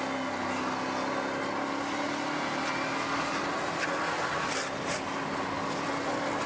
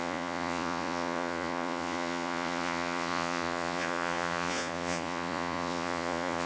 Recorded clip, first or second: first